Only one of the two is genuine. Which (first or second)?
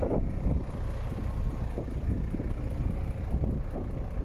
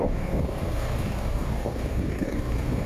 first